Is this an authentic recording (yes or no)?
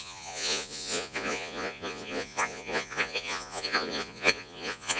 no